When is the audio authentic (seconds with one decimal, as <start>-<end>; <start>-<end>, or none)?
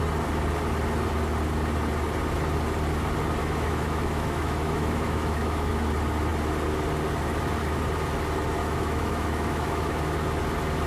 0.0-3.4; 5.7-8.6; 10.0-10.9